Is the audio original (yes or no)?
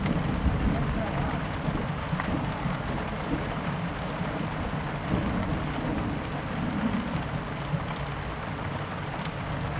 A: yes